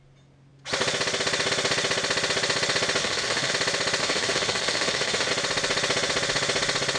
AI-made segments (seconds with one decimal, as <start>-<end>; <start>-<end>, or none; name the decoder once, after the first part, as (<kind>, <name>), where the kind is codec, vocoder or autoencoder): 3.0-3.5 (autoencoder, DAC-VAE); 4.0-5.3